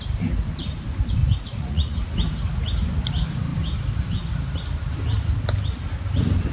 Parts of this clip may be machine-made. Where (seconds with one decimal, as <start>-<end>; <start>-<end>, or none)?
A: 1.2-2.0